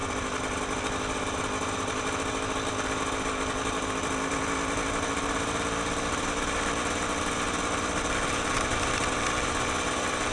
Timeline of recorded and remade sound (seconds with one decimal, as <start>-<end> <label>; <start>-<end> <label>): 0.0-10.3 recorded